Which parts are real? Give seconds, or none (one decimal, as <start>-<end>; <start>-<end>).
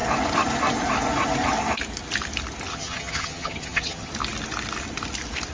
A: 0.0-2.7; 4.1-5.5